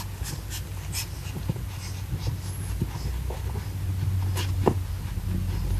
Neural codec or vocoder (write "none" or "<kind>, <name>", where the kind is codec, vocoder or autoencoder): none